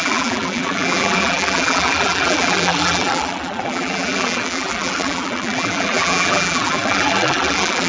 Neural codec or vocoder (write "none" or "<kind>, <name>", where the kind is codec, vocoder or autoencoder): vocoder, BigVGAN v2